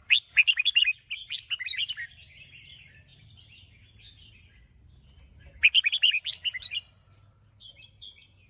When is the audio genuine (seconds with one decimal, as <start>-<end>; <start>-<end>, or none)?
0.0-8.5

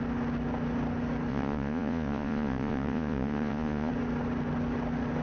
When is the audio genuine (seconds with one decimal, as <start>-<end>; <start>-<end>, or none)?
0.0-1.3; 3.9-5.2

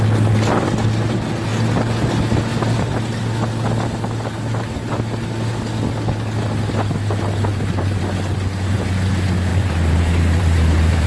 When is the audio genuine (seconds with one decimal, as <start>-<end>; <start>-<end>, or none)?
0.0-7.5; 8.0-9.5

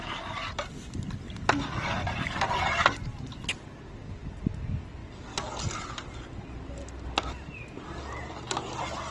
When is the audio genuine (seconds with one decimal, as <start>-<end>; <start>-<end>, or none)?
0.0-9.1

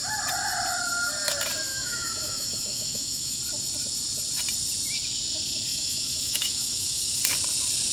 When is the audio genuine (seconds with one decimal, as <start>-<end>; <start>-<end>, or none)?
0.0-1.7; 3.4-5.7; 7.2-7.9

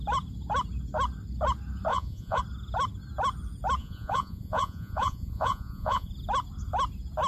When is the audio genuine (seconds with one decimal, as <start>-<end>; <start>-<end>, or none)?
0.0-1.9; 2.4-3.8; 6.1-7.3